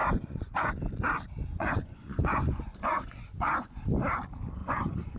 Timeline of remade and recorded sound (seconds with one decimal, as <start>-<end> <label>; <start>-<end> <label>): 0.0-0.7 remade; 0.7-1.5 recorded; 1.5-3.8 remade; 3.8-4.6 recorded; 4.6-5.2 remade